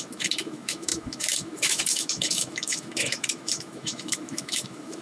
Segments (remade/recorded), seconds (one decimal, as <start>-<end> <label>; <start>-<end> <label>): 0.0-5.0 remade